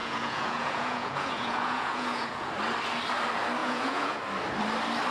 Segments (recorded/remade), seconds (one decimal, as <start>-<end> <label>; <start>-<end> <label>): 0.0-2.5 remade; 2.5-3.6 recorded; 3.6-4.2 remade; 4.2-5.1 recorded